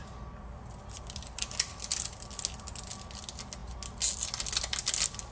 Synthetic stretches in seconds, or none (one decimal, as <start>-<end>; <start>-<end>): none